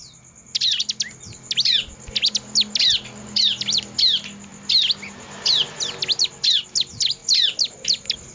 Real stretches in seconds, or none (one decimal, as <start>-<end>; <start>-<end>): 0.0-8.3